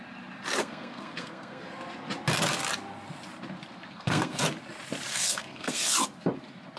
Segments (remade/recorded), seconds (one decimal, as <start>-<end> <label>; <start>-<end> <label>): 0.0-0.6 recorded; 0.6-1.6 remade; 1.6-3.9 recorded; 3.9-4.4 remade; 4.4-5.1 recorded; 5.1-6.0 remade; 6.0-6.8 recorded